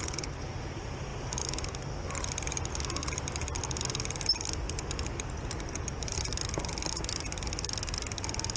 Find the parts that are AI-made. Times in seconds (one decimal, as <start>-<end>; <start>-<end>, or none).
none